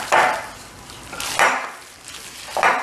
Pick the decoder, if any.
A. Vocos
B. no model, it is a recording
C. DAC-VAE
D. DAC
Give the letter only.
B